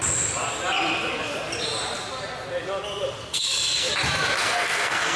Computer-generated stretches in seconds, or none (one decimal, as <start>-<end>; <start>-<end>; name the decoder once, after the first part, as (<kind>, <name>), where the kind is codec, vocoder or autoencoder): 3.3-3.9 (codec, SNAC); 4.4-5.2